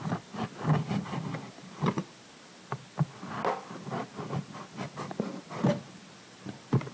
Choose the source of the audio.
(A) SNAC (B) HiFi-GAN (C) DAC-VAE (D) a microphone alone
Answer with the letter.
D